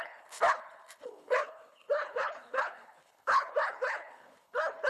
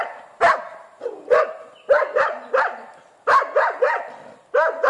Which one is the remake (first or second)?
first